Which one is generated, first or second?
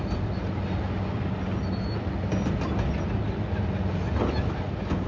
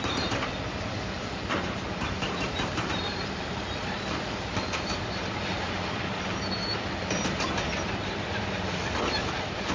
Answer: second